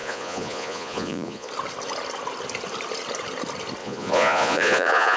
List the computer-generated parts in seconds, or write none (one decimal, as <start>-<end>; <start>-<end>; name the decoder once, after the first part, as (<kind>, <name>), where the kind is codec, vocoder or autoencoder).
0.0-1.5 (vocoder, Vocos); 3.8-5.2

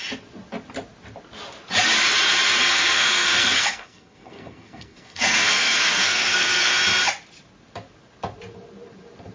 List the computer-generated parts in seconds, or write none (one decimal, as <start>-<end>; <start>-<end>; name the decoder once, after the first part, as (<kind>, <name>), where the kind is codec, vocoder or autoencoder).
2.6-6.7 (codec, SNAC)

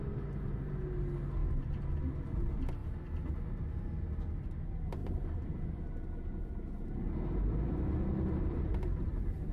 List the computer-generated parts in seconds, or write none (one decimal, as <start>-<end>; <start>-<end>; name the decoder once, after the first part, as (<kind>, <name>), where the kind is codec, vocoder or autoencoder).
5.0-5.9 (vocoder, BigVGAN v2)

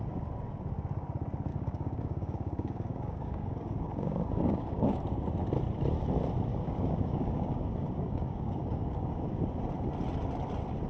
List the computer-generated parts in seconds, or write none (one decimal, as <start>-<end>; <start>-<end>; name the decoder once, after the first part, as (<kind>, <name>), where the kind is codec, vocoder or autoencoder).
1.5-5.0 (codec, DAC); 6.5-9.2

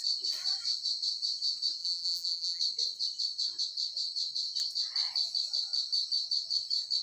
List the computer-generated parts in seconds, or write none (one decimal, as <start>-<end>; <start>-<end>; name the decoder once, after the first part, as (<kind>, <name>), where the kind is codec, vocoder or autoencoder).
1.8-2.6 (vocoder, BigVGAN v2)

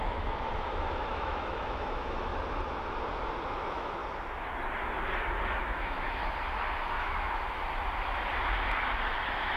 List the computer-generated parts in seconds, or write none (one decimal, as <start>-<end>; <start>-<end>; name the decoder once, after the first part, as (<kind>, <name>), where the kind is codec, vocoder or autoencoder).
0.0-2.3 (autoencoder, DAC-VAE); 3.4-4.0; 5.6-6.2; 7.0-7.6; 9.2-9.6

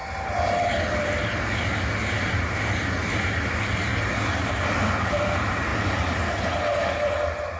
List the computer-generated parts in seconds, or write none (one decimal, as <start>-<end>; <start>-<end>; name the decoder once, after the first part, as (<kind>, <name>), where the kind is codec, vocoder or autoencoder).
5.7-6.3 (vocoder, BigVGAN v2)

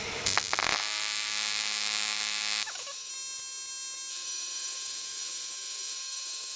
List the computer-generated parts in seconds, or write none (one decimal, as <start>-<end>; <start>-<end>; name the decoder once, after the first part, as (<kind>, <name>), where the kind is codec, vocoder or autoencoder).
0.8-3.1 (autoencoder, DAC-VAE); 4.1-6.6